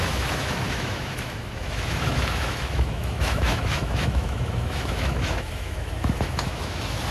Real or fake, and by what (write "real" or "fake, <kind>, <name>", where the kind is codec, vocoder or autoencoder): fake, autoencoder, DAC-VAE